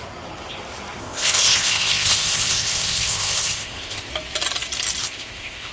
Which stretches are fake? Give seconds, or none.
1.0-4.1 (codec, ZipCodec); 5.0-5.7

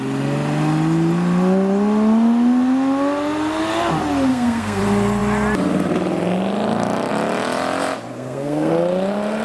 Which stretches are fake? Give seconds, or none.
4.3-4.8 (codec, SNAC); 8.1-8.7

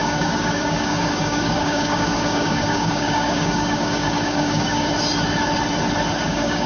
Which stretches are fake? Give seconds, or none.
0.0-4.9 (codec, DAC); 6.2-6.7

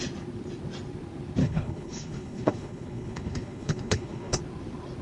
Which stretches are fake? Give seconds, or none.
1.4-4.4 (codec, HILCodec)

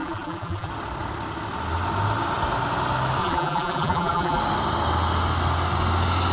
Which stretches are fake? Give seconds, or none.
0.0-0.7 (vocoder, BigVGAN v2); 3.2-4.4

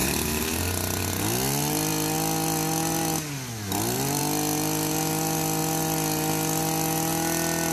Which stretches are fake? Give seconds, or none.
0.0-0.6 (vocoder, BigVGAN v2)